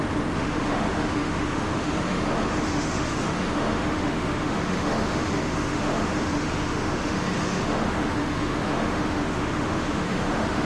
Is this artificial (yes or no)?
yes